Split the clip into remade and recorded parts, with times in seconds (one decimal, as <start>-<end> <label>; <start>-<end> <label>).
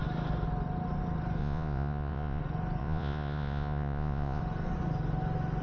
0.0-1.4 recorded; 1.4-2.4 remade; 2.4-2.8 recorded; 2.8-4.4 remade; 4.4-5.6 recorded